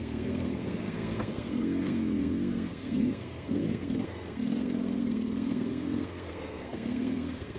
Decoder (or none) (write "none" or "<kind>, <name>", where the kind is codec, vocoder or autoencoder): codec, SNAC